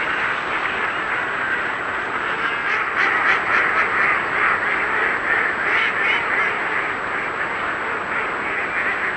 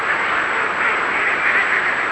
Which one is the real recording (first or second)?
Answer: first